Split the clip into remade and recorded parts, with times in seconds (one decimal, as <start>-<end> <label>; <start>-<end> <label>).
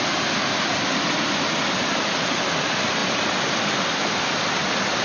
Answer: 0.0-5.0 recorded